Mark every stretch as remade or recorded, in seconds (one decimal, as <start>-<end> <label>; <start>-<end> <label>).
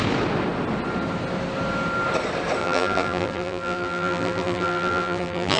0.0-2.6 recorded; 2.6-5.6 remade